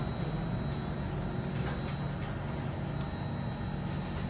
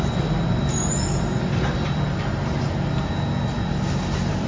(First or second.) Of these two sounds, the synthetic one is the second